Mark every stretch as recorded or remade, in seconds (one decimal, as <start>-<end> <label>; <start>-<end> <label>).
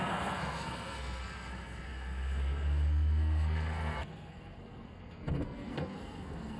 0.0-6.6 remade